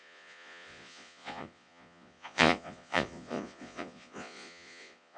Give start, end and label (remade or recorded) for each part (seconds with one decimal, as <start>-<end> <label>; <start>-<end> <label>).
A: 0.0-5.2 remade